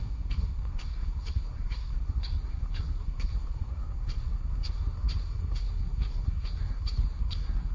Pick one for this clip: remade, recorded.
remade